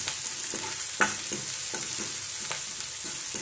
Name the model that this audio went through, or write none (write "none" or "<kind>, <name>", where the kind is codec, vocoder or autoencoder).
none